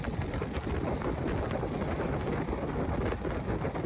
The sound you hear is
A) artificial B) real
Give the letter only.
B